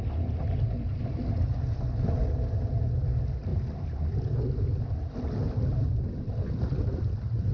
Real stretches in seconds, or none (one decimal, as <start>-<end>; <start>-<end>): 0.0-3.5; 4.2-7.5